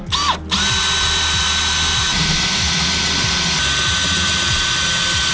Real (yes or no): yes